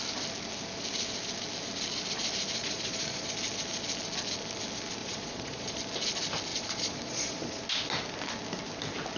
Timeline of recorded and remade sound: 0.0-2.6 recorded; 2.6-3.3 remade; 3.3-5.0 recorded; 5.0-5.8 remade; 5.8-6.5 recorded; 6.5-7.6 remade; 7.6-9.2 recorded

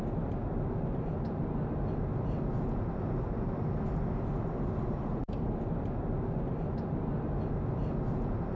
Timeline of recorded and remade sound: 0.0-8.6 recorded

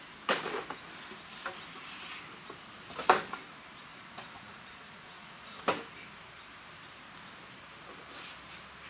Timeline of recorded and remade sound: 0.0-3.9 recorded; 3.9-5.6 remade; 5.6-8.9 recorded

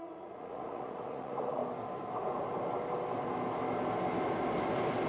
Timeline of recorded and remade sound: 0.0-1.6 remade; 1.6-5.1 recorded

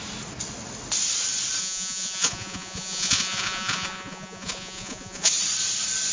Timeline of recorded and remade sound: 0.0-1.6 recorded; 1.6-5.3 remade; 5.3-6.1 recorded

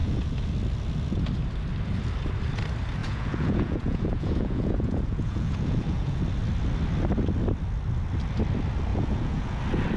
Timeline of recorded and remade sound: 0.0-0.5 remade; 0.5-3.0 recorded; 3.0-6.2 remade; 6.2-8.9 recorded; 8.9-9.6 remade; 9.6-10.0 recorded

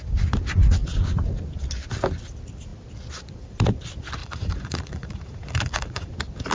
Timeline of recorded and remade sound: 0.0-4.2 recorded; 4.2-6.1 remade; 6.1-6.5 recorded